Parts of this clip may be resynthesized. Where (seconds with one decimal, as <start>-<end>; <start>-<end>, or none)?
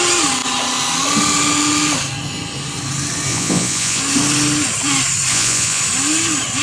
3.3-4.0; 5.3-5.8